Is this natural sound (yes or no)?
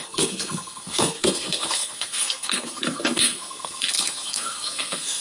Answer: no